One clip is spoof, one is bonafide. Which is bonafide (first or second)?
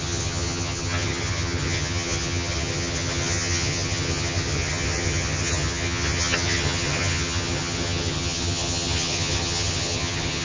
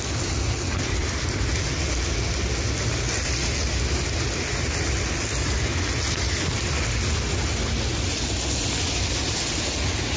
second